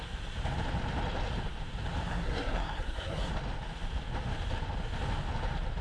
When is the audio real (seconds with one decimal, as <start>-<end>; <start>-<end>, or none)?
0.0-2.1; 3.3-5.8